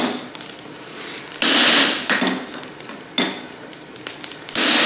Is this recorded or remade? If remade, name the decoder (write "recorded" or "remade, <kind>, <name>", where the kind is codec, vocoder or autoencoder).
recorded